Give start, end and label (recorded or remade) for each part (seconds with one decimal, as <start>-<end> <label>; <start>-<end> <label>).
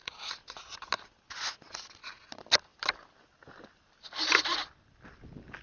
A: 0.0-5.6 recorded